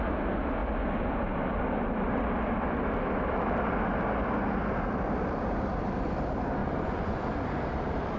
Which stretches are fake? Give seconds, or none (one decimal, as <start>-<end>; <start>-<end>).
6.6-7.2